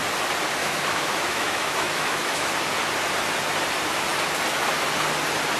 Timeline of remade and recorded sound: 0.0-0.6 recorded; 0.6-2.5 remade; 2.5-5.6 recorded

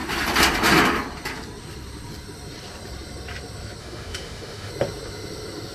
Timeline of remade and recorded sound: 0.0-3.8 recorded; 3.8-4.7 remade; 4.7-5.7 recorded

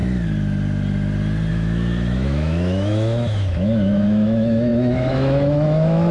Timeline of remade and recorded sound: 0.0-1.5 recorded; 1.5-6.1 remade

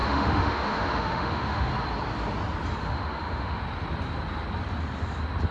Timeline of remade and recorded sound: 0.0-1.7 remade; 1.7-2.8 recorded; 2.8-3.6 remade; 3.6-5.5 recorded

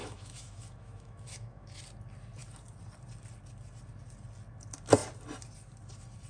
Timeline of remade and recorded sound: 0.0-1.8 remade; 1.8-6.3 recorded

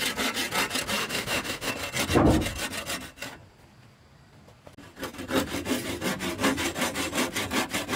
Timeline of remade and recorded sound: 0.0-1.0 recorded; 1.0-1.7 remade; 1.7-8.0 recorded

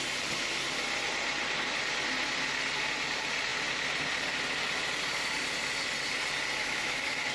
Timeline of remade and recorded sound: 0.0-6.6 recorded; 6.6-7.3 remade